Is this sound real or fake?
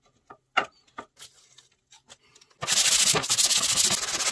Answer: real